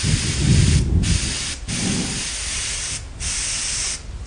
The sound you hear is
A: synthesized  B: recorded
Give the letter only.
B